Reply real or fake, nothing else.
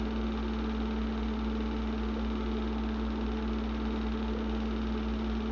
real